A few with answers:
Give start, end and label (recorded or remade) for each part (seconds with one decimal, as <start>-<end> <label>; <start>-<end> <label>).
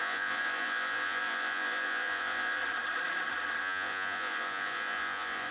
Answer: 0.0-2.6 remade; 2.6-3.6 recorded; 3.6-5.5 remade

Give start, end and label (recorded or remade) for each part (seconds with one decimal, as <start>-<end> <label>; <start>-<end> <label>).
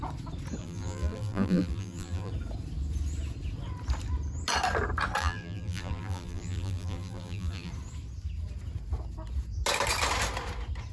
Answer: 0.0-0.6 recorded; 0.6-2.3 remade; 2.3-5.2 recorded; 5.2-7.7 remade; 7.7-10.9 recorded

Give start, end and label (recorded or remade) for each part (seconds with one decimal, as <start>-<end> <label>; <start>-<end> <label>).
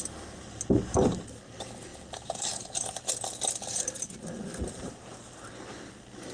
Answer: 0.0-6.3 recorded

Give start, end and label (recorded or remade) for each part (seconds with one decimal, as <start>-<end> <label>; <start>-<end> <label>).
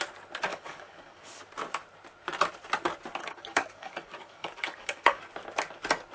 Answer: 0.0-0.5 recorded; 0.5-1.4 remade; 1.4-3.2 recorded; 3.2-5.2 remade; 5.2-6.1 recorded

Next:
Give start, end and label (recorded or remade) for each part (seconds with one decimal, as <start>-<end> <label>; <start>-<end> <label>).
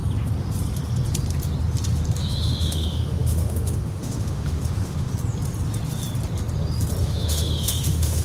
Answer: 0.0-2.2 recorded; 2.2-5.1 remade; 5.1-7.0 recorded; 7.0-8.2 remade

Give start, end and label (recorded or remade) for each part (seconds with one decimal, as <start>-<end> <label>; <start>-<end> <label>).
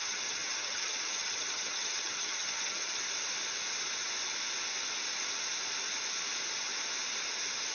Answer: 0.0-3.0 remade; 3.0-7.7 recorded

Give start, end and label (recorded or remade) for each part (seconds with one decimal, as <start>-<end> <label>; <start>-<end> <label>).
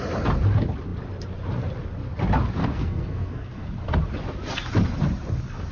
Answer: 0.0-2.6 recorded; 2.6-3.7 remade; 3.7-5.7 recorded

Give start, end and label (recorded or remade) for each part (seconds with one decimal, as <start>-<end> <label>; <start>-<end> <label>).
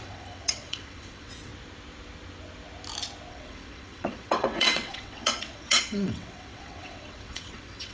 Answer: 0.0-1.5 remade; 1.5-3.3 recorded; 3.3-7.9 remade